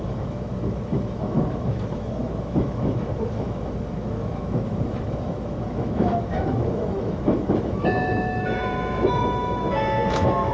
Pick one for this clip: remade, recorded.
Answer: remade